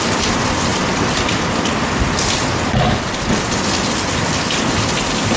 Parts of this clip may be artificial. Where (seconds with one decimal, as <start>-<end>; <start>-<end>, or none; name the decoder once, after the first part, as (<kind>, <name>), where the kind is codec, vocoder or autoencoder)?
none